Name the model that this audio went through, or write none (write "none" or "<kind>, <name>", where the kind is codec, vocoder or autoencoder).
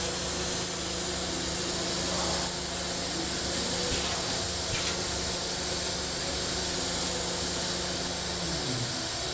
none